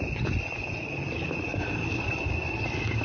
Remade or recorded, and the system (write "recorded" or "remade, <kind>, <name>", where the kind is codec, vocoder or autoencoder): recorded